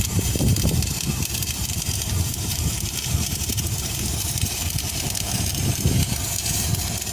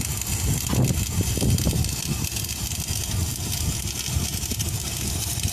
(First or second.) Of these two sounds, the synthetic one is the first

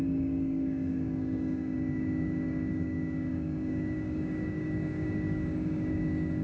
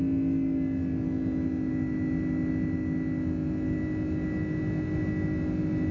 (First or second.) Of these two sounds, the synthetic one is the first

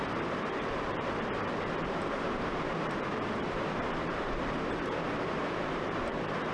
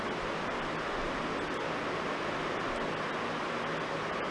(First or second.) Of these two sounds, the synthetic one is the first